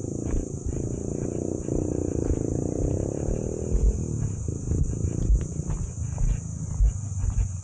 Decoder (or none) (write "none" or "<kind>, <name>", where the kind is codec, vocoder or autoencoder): none